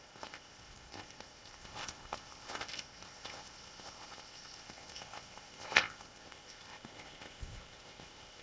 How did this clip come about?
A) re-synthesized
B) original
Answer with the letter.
A